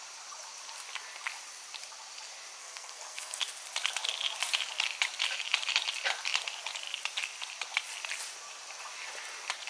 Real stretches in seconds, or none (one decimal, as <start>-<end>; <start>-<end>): 0.0-2.6; 3.4-9.7